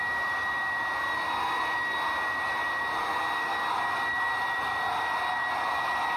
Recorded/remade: recorded